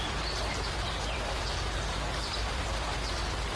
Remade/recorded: remade